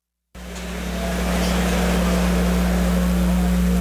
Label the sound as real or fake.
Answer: real